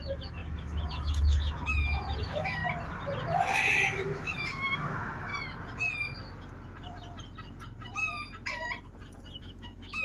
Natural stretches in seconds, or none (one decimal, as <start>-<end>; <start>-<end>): 2.6-3.9; 5.3-9.4